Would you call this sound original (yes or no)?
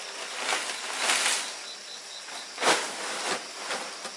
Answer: yes